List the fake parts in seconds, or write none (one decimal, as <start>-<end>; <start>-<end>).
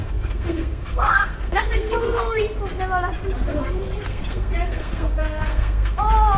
0.0-2.4; 3.5-6.0